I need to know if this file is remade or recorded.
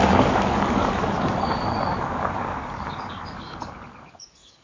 remade